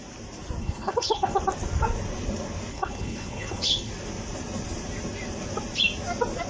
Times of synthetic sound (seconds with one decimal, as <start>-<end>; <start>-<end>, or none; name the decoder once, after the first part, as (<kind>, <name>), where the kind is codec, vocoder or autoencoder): 0.6-1.4 (codec, HILCodec); 2.7-3.9